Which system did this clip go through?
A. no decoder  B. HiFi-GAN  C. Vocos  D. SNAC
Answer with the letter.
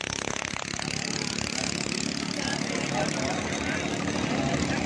A